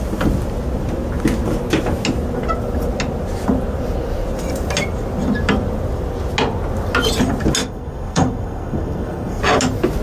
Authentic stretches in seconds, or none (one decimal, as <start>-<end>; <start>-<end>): 0.0-7.6; 9.4-10.0